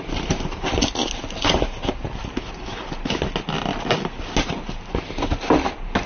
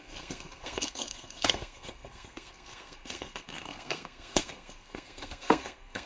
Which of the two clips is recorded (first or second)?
first